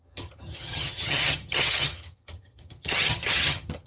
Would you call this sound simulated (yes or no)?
yes